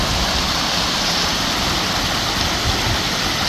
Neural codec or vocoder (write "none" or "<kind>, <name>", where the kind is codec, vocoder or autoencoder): none